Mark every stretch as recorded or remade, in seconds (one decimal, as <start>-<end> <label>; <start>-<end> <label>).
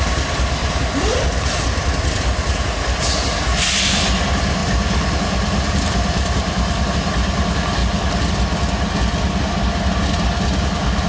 0.0-0.6 recorded; 0.6-3.0 remade; 3.0-4.6 recorded; 4.6-6.9 remade; 6.9-7.8 recorded; 7.8-8.3 remade; 8.3-11.1 recorded